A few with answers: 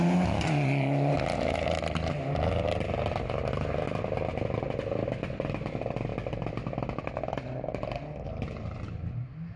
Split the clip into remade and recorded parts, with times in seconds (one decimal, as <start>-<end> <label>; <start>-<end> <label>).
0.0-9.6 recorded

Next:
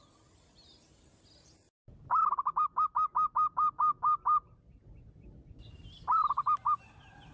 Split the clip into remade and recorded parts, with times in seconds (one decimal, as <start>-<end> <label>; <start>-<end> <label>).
0.0-7.3 recorded

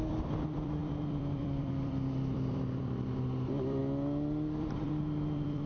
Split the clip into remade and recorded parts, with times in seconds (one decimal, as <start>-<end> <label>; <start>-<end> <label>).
0.0-3.8 remade; 3.8-4.6 recorded; 4.6-5.7 remade

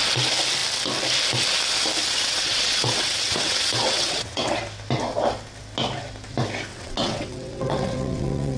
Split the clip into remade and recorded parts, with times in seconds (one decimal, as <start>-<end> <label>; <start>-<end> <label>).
0.0-2.0 recorded; 2.0-4.6 remade; 4.6-6.7 recorded; 6.7-8.6 remade

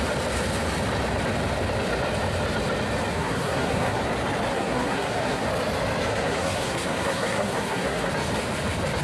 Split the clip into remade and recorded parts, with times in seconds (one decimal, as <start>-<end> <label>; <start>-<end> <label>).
0.0-3.1 recorded; 3.1-4.0 remade; 4.0-4.5 recorded; 4.5-5.5 remade; 5.5-6.1 recorded; 6.1-8.1 remade; 8.1-9.0 recorded